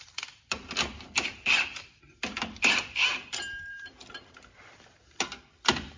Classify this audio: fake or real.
fake